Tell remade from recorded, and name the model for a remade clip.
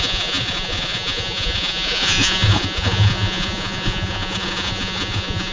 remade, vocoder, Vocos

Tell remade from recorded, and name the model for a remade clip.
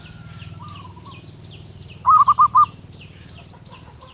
recorded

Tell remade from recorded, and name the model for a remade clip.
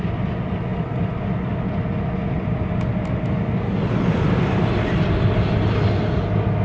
recorded